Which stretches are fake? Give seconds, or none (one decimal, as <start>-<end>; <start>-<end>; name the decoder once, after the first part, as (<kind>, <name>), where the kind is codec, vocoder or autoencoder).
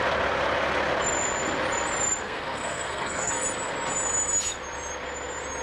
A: 2.2-3.3 (codec, SNAC)